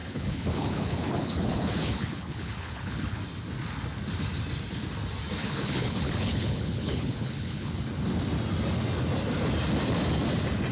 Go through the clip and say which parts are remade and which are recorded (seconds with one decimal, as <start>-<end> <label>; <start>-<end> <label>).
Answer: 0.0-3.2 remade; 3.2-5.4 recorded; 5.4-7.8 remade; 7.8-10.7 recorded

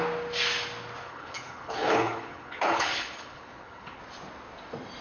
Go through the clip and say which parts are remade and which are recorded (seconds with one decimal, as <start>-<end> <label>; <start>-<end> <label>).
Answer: 0.0-1.0 recorded; 1.0-4.0 remade; 4.0-5.0 recorded

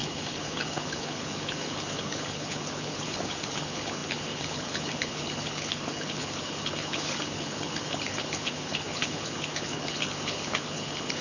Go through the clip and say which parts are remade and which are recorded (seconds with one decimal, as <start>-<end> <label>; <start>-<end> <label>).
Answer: 0.0-11.2 remade